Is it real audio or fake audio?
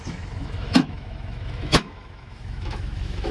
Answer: fake